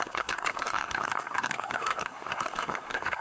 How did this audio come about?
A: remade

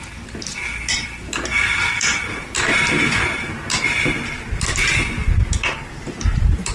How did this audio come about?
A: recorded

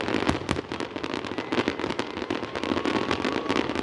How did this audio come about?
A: recorded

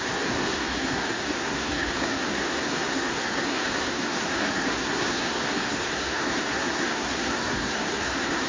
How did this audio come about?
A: remade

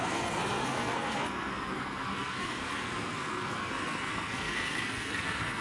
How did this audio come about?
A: remade